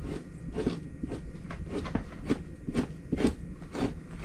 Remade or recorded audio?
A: recorded